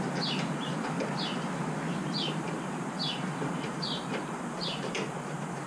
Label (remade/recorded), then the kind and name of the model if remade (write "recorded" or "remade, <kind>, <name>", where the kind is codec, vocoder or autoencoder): remade, vocoder, BigVGAN v2